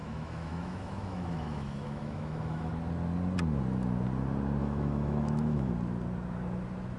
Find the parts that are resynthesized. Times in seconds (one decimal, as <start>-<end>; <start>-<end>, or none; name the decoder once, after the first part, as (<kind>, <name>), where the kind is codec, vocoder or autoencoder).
0.0-2.7 (autoencoder, DAC-VAE); 4.6-5.7